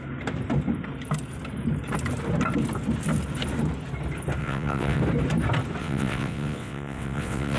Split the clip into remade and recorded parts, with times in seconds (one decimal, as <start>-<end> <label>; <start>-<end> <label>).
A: 0.0-4.4 recorded; 4.4-5.0 remade; 5.0-5.8 recorded; 5.8-7.6 remade